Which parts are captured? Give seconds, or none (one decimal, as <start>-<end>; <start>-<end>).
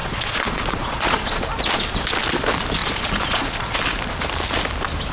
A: 1.4-2.8; 3.8-5.1